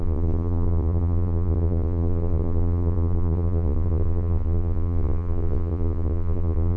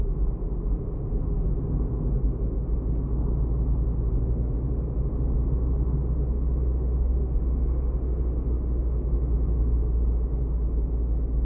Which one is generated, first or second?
first